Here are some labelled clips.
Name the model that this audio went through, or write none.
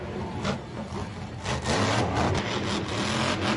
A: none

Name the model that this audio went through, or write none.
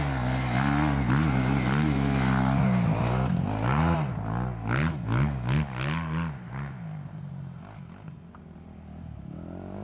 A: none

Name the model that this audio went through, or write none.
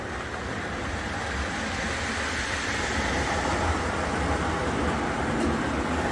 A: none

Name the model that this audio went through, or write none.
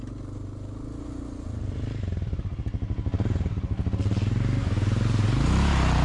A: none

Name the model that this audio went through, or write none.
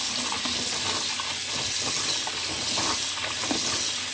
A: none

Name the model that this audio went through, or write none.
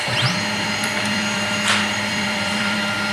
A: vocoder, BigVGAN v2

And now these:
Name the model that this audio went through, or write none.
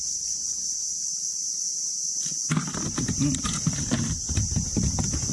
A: none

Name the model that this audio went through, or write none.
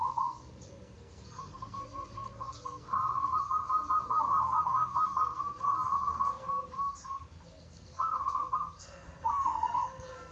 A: codec, SNAC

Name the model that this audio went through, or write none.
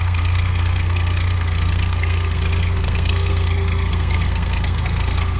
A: codec, SNAC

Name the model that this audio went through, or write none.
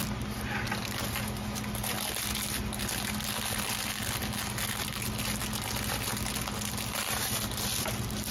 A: none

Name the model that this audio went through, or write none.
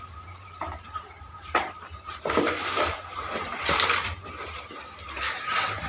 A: vocoder, BigVGAN v2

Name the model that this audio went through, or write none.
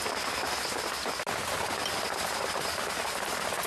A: none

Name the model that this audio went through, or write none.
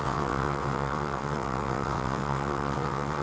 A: vocoder, WaveNeXt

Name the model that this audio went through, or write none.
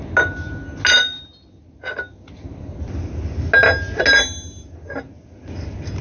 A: none